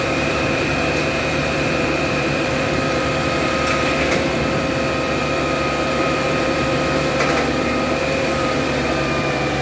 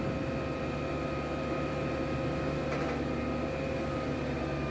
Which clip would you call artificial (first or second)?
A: first